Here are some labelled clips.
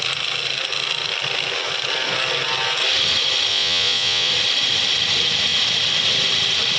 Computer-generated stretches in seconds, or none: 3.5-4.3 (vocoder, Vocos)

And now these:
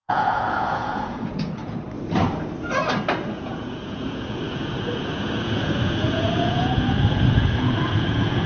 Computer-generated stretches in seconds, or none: 0.0-1.6 (vocoder, Vocos); 3.3-8.5

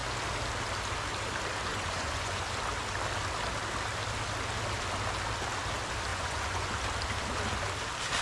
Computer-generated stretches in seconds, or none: 1.7-2.4 (vocoder, Vocos); 6.1-6.7

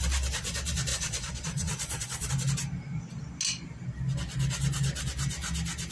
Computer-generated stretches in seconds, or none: 0.9-2.3 (vocoder, Vocos)

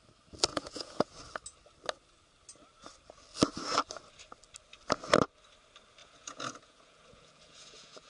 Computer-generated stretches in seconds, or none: 0.5-1.1 (vocoder, Vocos); 6.0-8.1

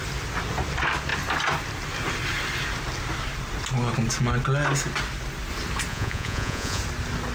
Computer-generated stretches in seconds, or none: 5.9-6.8 (vocoder, Vocos)

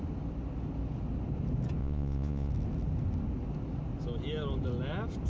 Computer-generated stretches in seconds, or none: 1.8-2.5 (vocoder, Vocos)